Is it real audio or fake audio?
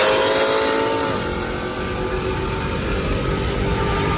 real